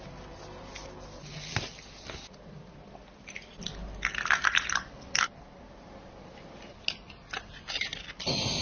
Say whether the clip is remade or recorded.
recorded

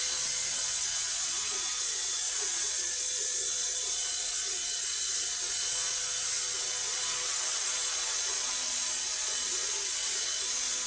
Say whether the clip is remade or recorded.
remade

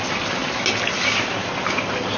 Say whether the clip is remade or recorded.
recorded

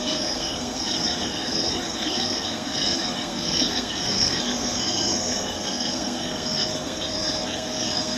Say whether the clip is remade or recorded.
remade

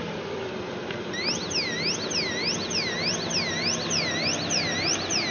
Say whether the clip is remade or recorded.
recorded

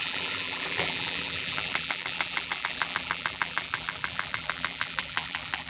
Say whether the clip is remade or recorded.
remade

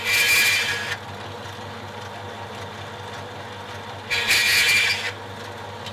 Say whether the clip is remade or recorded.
recorded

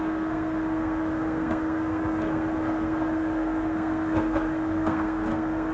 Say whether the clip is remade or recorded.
remade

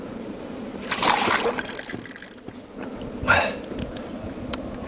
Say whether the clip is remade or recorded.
recorded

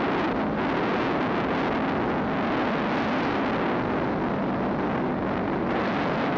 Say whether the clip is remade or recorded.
recorded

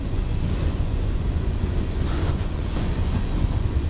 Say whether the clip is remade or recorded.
remade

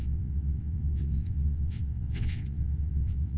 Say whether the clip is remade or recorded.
remade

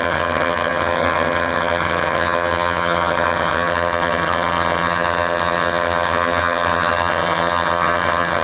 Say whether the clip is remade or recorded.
remade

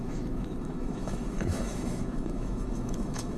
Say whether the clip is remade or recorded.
remade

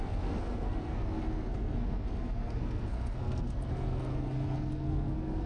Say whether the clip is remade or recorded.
remade